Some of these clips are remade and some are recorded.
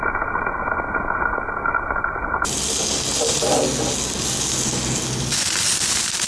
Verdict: recorded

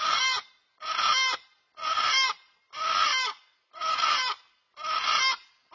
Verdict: recorded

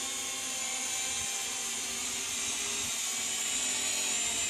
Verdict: recorded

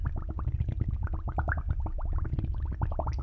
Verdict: recorded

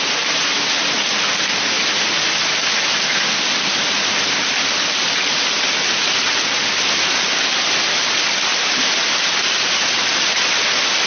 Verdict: recorded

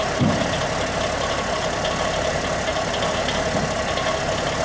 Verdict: recorded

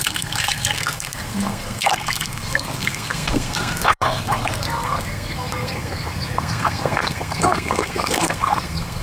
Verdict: remade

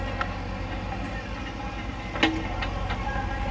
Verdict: recorded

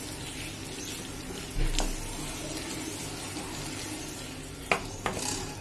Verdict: recorded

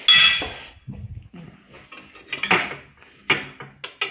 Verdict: recorded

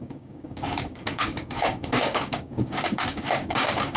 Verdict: remade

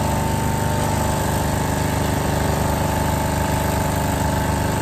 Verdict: recorded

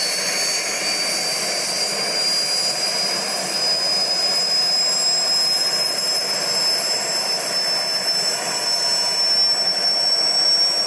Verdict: recorded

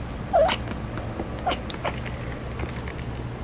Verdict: recorded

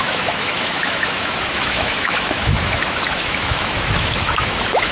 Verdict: remade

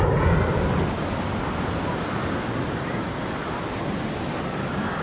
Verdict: recorded